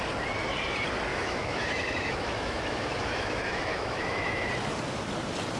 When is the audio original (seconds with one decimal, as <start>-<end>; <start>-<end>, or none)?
0.0-1.1; 4.5-5.6